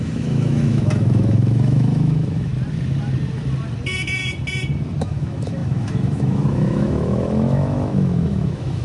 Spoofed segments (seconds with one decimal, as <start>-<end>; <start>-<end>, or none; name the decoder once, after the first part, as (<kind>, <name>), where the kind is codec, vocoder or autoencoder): 0.0-2.5 (autoencoder, DAC-VAE); 5.0-8.8